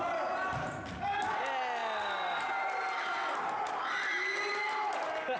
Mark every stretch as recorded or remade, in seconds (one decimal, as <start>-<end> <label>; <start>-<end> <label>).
0.0-5.4 recorded